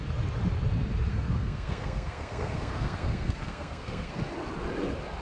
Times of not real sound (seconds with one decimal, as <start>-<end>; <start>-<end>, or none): 1.1-4.2